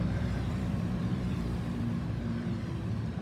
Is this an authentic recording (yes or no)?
no